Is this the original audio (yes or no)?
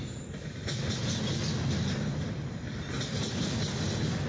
yes